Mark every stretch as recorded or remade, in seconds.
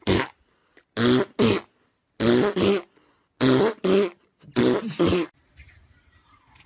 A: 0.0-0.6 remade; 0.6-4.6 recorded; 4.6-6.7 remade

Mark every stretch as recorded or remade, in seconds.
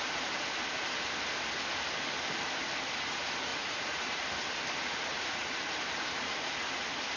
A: 0.0-3.5 recorded; 3.5-4.2 remade; 4.2-5.1 recorded; 5.1-5.6 remade; 5.6-7.2 recorded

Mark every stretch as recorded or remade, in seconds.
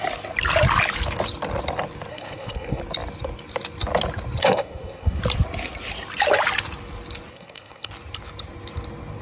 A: 0.0-2.1 recorded; 2.1-2.8 remade; 2.8-4.4 recorded; 4.4-5.2 remade; 5.2-7.3 recorded; 7.3-7.9 remade; 7.9-9.2 recorded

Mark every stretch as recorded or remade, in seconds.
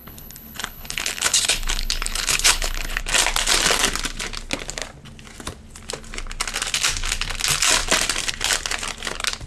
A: 0.0-3.0 remade; 3.0-9.5 recorded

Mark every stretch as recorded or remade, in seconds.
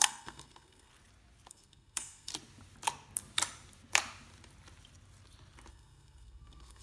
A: 0.0-0.9 remade; 0.9-1.5 recorded; 1.5-2.3 remade; 2.3-5.7 recorded; 5.7-6.8 remade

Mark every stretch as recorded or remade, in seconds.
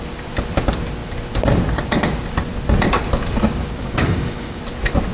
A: 0.0-3.8 recorded; 3.8-4.6 remade; 4.6-5.1 recorded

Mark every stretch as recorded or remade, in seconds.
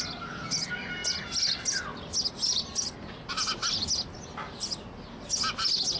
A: 0.0-6.0 recorded